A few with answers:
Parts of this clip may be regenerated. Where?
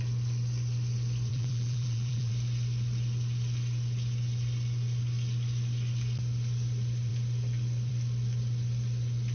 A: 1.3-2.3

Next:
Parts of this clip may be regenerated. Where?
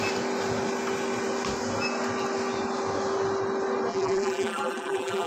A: 3.9-5.3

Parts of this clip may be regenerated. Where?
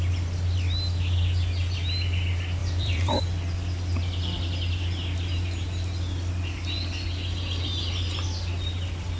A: 2.6-3.2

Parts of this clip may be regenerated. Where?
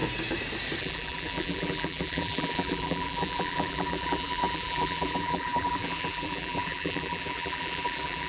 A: 0.8-8.3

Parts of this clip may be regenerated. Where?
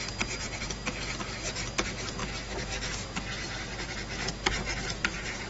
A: none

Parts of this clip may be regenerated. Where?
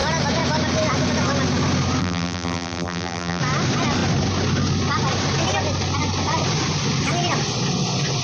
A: 2.0-3.4